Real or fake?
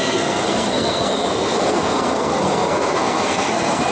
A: fake